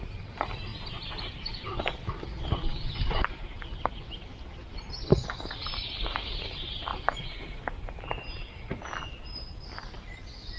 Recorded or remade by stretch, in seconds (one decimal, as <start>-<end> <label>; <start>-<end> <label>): 0.0-4.3 remade; 4.3-5.3 recorded; 5.3-6.9 remade; 6.9-9.2 recorded; 9.2-10.6 remade